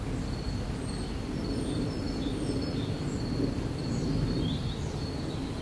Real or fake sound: real